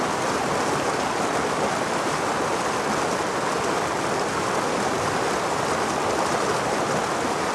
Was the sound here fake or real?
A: real